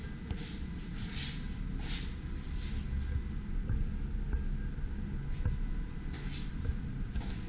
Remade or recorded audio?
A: recorded